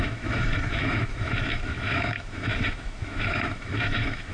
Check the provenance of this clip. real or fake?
fake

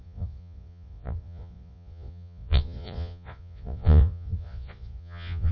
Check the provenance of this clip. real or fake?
fake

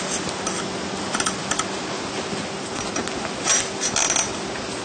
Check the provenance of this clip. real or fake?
real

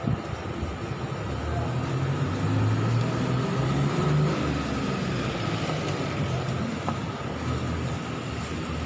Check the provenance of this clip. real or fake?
real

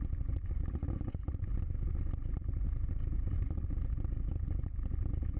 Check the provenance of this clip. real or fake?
real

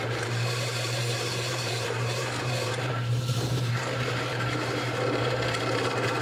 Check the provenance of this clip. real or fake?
fake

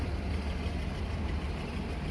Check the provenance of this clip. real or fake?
real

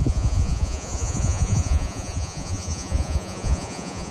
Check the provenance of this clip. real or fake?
fake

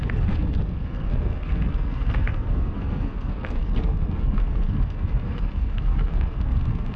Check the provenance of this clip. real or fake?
fake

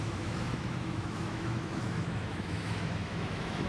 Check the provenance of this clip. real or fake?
fake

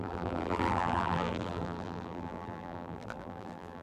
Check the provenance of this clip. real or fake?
fake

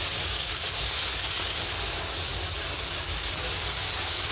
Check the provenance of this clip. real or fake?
fake